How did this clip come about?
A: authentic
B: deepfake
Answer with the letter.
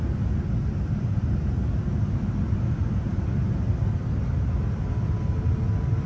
A